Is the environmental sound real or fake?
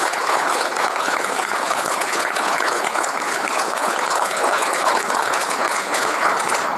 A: fake